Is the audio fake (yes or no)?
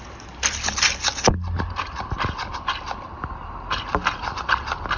no